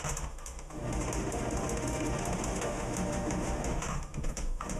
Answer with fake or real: fake